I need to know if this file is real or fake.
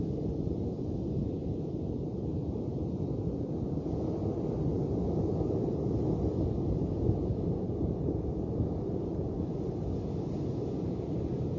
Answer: real